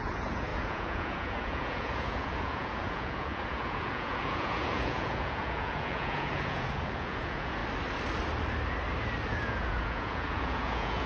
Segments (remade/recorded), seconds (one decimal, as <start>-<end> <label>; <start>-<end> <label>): 0.0-7.6 remade; 7.6-9.3 recorded; 9.3-11.1 remade